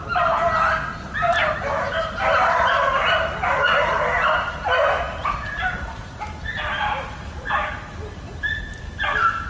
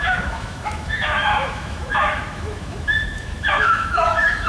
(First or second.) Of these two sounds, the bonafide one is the first